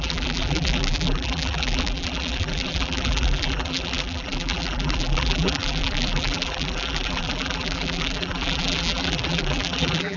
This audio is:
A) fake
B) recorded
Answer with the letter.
A